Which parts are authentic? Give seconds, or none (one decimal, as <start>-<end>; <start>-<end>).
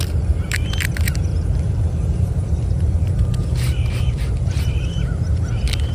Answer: 0.0-1.3; 4.3-5.9